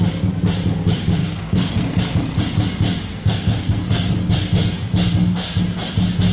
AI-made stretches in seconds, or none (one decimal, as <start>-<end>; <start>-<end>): 1.2-2.0; 3.1-4.1